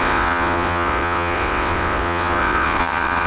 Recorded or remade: remade